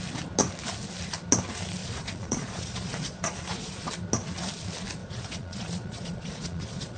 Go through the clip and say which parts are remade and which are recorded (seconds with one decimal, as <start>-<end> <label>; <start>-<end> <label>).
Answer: 0.0-1.8 recorded; 1.8-3.9 remade; 3.9-5.0 recorded; 5.0-7.0 remade